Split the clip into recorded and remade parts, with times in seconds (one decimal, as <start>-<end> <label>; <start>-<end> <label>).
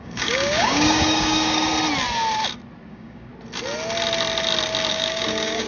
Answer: 0.0-1.7 remade; 1.7-2.9 recorded; 2.9-3.3 remade; 3.3-4.9 recorded; 4.9-5.7 remade